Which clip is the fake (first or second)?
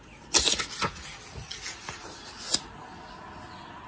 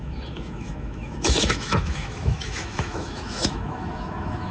second